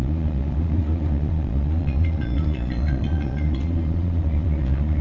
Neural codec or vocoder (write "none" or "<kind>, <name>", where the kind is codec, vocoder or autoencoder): vocoder, Vocos